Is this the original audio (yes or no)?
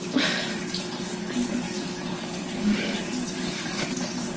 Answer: no